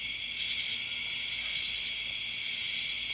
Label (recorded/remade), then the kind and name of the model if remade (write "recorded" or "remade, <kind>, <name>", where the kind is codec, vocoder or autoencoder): recorded